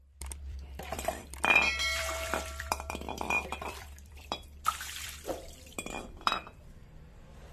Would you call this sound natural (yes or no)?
no